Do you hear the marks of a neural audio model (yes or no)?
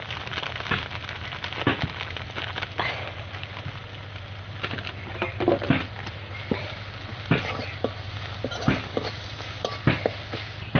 no